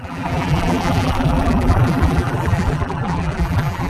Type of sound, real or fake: fake